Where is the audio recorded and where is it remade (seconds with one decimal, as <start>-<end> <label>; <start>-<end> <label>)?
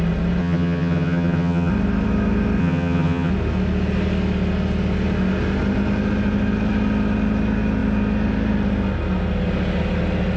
0.0-0.4 recorded; 0.4-1.7 remade; 1.7-2.6 recorded; 2.6-3.3 remade; 3.3-10.4 recorded